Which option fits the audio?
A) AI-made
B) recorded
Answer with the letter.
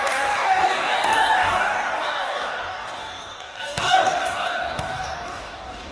A